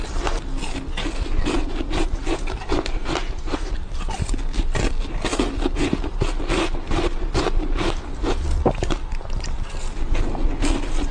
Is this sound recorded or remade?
recorded